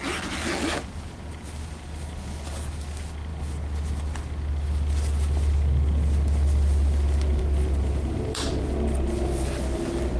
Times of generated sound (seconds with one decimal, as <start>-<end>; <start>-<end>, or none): none